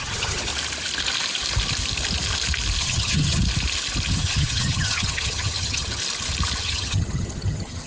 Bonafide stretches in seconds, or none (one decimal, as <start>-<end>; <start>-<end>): 0.5-2.8; 3.4-4.1; 6.0-6.6